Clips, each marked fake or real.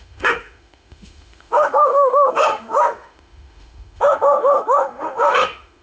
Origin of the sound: fake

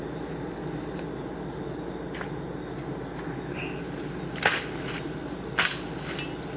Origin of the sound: real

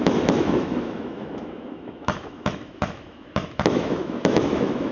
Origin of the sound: fake